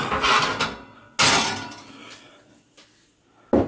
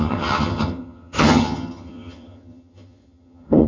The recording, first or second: first